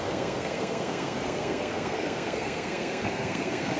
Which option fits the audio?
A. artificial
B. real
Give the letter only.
A